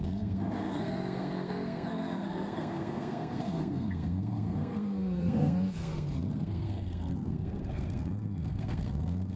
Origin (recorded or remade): remade